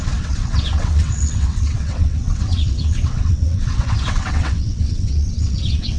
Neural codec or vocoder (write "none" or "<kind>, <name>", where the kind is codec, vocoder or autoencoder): vocoder, WaveNeXt